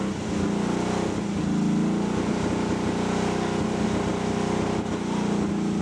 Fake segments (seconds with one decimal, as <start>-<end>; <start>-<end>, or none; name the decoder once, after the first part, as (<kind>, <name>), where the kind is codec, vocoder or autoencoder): none